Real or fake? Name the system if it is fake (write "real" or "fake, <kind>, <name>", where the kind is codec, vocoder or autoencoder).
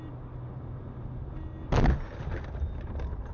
real